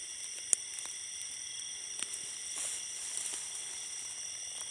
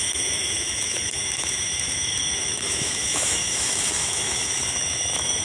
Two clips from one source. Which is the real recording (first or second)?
first